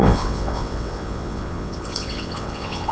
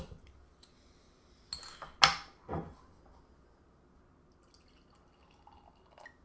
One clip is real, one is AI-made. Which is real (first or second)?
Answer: second